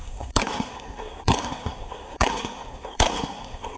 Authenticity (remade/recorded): remade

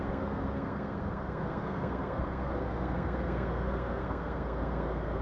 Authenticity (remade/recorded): remade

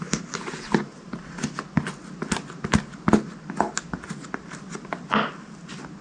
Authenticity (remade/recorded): recorded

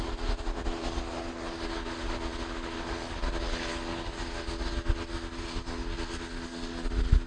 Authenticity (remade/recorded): recorded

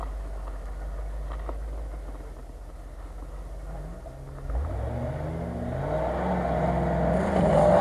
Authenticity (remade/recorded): recorded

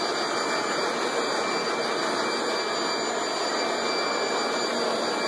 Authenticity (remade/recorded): recorded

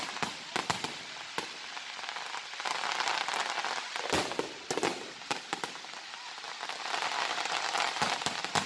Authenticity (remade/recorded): recorded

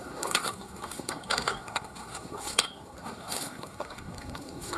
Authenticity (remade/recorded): remade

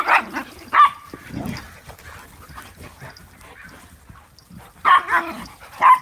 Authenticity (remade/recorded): recorded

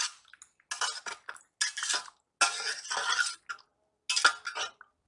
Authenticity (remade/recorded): recorded